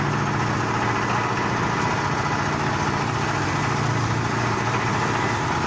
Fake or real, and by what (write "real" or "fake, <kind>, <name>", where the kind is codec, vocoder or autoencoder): real